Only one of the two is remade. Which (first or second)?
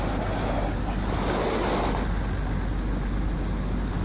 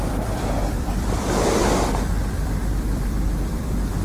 second